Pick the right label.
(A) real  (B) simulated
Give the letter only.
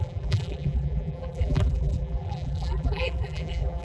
B